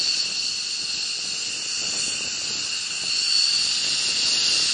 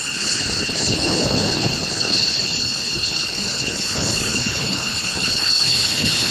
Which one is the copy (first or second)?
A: second